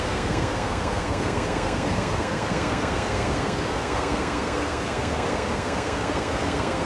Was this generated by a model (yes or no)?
yes